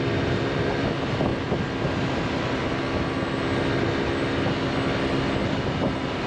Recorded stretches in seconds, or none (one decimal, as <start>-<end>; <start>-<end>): 0.0-6.3